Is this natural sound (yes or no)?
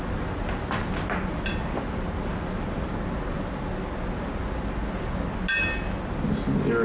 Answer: yes